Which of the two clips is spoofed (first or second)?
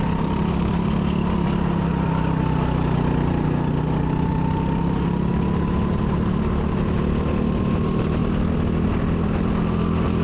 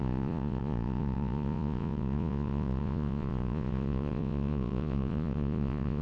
second